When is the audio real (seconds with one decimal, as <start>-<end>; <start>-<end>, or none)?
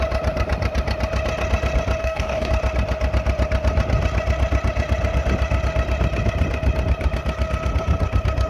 0.0-2.0; 2.5-8.5